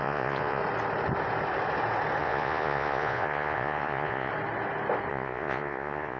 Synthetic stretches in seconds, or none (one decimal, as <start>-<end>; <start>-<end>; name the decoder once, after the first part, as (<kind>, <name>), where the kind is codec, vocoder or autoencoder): 0.0-0.6 (vocoder, Vocos); 2.2-4.3; 5.1-6.2